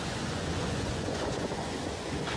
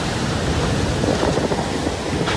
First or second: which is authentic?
second